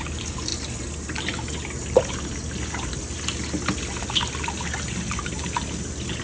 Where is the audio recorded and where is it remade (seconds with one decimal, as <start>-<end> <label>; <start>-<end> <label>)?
0.0-6.2 recorded